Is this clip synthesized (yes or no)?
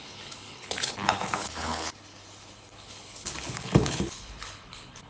yes